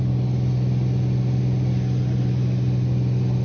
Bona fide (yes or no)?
yes